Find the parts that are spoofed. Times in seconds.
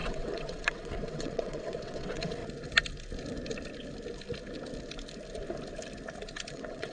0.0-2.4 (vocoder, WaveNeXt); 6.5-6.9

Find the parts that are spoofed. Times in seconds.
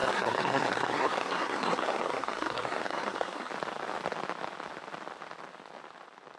0.0-3.5 (codec, SNAC)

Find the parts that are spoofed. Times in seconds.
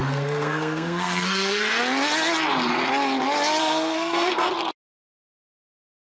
0.0-1.8 (codec, SNAC); 3.6-4.5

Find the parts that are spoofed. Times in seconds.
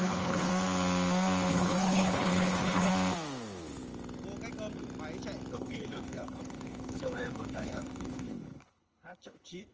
0.0-0.5 (codec, HILCodec); 1.5-2.9; 5.5-9.7